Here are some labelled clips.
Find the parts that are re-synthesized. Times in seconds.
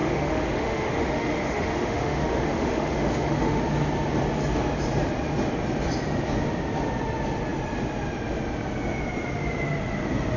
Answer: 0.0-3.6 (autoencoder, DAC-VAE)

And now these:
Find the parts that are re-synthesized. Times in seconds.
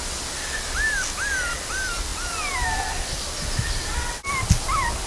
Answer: none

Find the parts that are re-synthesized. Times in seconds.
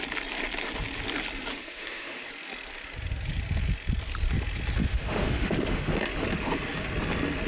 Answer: 1.5-2.3 (autoencoder, DAC-VAE); 4.8-5.9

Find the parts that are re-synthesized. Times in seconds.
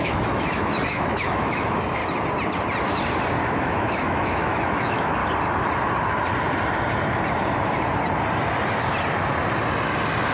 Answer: 0.0-2.0 (autoencoder, DAC-VAE); 3.4-5.2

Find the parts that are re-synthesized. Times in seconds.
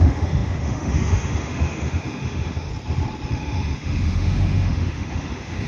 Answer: 0.0-2.7 (autoencoder, DAC-VAE); 3.3-5.7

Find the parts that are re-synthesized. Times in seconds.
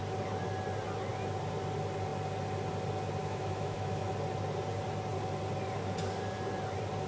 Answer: 3.2-4.1 (autoencoder, DAC-VAE)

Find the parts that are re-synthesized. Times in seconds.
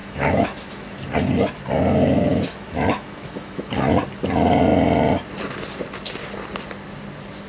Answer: 0.0-1.0 (autoencoder, DAC-VAE); 2.3-3.7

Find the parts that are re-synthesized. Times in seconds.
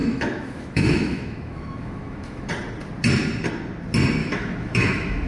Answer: 0.0-2.5 (autoencoder, DAC-VAE); 4.2-5.3